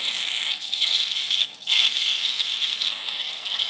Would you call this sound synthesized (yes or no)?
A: yes